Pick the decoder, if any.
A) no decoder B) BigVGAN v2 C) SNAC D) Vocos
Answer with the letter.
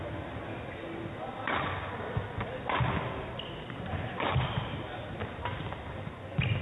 A